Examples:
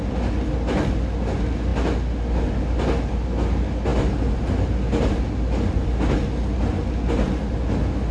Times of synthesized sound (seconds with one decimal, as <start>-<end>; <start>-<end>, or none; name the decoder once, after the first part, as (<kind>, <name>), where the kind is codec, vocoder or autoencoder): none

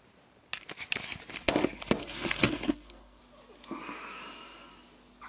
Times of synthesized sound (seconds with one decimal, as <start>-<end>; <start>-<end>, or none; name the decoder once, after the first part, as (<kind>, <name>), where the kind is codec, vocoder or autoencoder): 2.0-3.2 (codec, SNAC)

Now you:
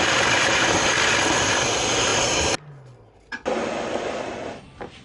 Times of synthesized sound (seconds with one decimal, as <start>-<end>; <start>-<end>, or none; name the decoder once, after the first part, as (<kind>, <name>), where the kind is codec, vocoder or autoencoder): none

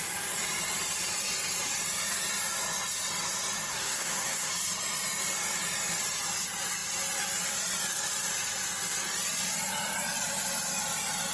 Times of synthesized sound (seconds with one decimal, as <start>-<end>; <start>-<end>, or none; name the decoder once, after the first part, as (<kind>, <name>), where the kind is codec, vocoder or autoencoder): 3.7-4.5 (codec, SNAC)

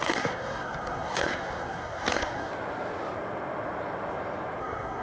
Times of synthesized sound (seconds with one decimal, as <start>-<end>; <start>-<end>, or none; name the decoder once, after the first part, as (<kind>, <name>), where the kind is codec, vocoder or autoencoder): 0.0-2.5 (codec, SNAC); 4.6-5.0

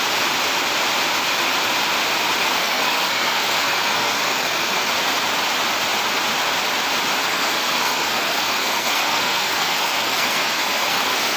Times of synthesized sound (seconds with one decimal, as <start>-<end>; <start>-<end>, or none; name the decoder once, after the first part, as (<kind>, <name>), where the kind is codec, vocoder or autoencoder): 2.6-4.9 (codec, SNAC); 7.2-11.4